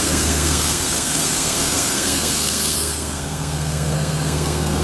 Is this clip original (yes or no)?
no